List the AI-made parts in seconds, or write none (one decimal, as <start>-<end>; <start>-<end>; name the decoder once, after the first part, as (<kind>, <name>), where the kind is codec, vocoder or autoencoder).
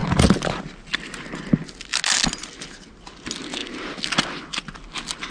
none